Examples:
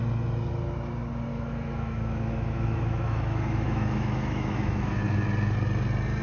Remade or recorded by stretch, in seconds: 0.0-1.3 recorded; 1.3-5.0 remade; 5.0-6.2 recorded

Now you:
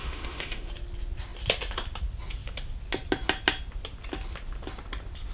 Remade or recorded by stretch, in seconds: 0.0-0.7 remade; 0.7-5.3 recorded

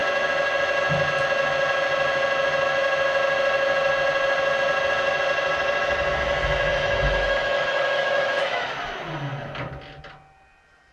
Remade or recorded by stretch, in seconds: 0.0-6.7 recorded; 6.7-8.7 remade; 8.7-10.9 recorded